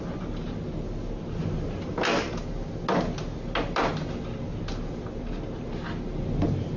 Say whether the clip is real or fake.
real